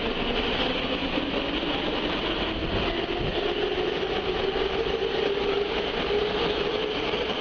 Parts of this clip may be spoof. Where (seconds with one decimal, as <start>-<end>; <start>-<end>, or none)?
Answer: none